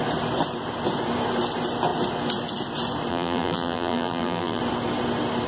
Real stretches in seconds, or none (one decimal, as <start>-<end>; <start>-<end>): 0.0-3.1; 4.6-5.5